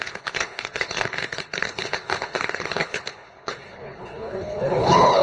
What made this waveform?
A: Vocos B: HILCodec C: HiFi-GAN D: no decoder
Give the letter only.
B